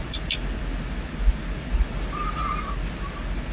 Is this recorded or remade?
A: recorded